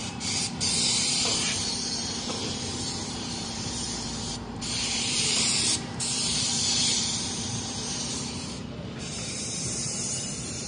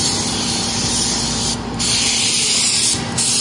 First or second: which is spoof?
first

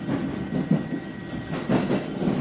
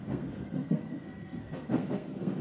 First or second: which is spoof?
second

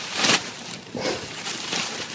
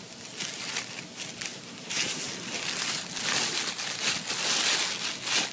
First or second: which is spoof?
first